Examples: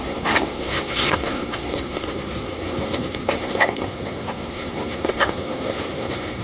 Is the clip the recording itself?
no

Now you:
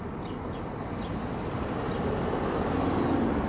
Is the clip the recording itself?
yes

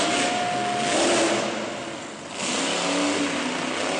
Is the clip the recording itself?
yes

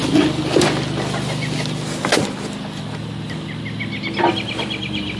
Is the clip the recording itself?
yes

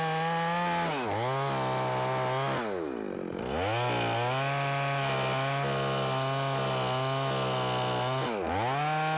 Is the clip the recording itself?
yes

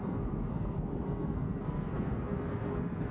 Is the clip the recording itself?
no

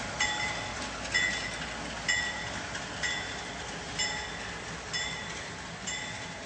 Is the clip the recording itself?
yes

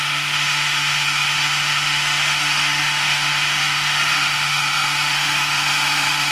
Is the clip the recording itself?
no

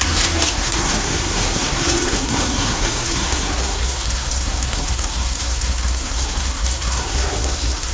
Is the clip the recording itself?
no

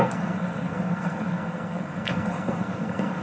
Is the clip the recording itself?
no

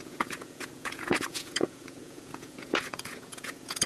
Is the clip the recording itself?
no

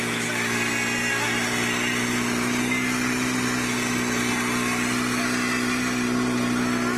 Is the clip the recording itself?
yes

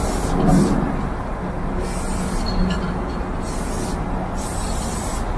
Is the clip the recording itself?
yes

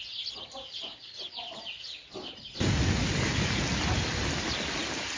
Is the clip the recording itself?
yes